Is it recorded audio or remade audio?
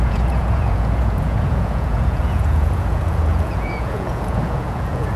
remade